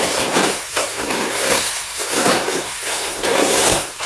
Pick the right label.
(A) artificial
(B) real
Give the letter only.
A